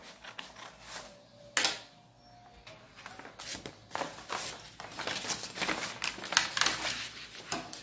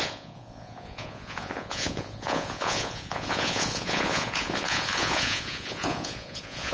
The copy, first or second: second